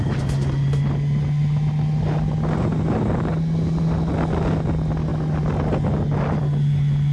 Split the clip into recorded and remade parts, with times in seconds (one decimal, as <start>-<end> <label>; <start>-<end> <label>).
0.0-7.1 recorded